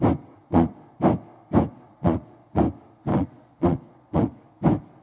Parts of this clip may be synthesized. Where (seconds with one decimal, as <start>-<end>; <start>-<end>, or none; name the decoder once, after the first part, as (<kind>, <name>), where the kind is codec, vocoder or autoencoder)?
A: 0.4-1.0 (vocoder, Vocos); 1.7-2.6; 3.1-4.4